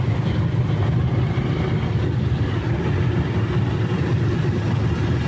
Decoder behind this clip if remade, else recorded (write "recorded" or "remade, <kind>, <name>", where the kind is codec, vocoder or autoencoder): recorded